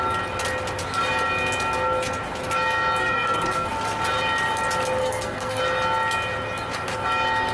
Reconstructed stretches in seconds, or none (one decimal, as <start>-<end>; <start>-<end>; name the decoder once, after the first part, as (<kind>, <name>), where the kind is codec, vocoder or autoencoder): 3.0-3.7 (codec, SNAC); 5.0-5.6